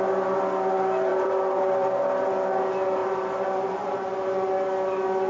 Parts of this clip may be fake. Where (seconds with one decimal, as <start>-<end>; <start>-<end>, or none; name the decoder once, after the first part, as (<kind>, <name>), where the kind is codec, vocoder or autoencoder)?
1.1-1.9 (vocoder, BigVGAN v2); 3.0-4.3